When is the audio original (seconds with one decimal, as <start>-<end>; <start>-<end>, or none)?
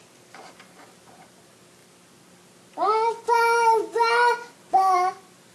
0.0-5.5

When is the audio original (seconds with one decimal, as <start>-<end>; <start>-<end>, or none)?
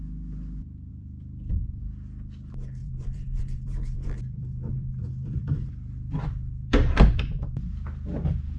0.0-0.9; 1.8-2.8; 7.6-8.6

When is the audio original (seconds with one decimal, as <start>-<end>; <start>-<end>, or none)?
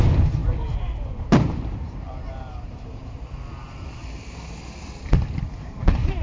4.0-5.0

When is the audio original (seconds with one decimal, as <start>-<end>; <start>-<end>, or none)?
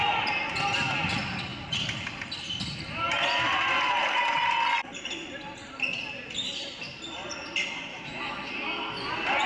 0.0-7.9; 8.5-9.5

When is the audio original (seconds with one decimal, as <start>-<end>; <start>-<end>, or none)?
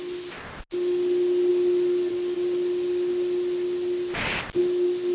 0.0-5.1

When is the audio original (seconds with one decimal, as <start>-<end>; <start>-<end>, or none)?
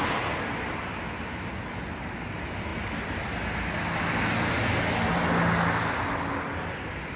0.0-7.2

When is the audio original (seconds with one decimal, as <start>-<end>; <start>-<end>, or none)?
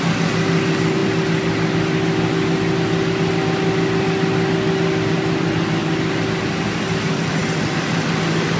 0.0-8.6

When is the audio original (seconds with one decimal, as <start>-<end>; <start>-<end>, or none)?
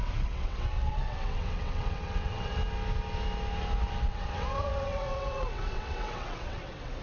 2.6-4.1